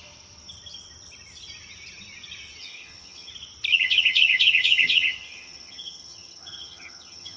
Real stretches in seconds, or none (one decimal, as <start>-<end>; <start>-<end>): 0.0-2.6; 3.3-3.7